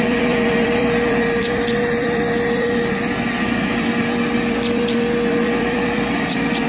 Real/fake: fake